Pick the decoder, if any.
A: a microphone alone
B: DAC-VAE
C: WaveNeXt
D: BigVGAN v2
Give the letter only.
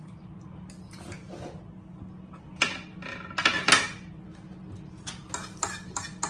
A